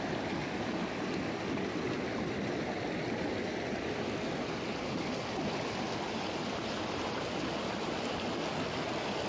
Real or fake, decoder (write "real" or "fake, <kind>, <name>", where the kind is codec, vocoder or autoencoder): real